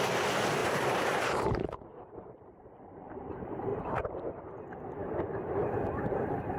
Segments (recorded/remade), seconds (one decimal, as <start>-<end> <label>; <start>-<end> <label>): 0.0-0.6 recorded; 0.6-3.3 remade; 3.3-3.7 recorded; 3.7-4.2 remade; 4.2-6.6 recorded